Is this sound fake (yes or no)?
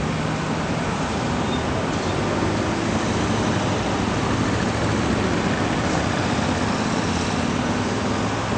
no